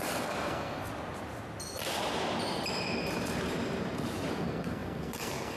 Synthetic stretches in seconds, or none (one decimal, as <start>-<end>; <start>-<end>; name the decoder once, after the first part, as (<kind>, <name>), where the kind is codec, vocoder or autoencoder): 0.0-0.9 (codec, SNAC); 4.3-5.6